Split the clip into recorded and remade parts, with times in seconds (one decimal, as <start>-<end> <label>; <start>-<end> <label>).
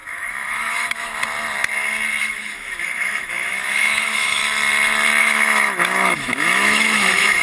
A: 0.0-1.2 remade; 1.2-2.2 recorded; 2.2-4.4 remade; 4.4-5.2 recorded; 5.2-7.4 remade